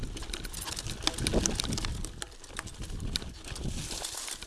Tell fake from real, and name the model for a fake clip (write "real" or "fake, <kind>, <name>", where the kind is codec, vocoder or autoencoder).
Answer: real